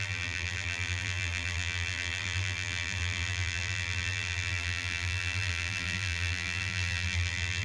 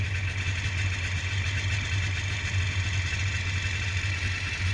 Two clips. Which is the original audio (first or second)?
second